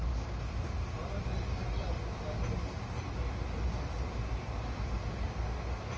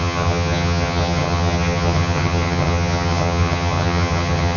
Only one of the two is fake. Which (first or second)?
second